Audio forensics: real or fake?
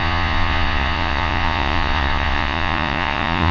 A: fake